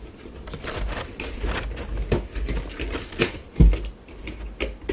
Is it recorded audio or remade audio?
recorded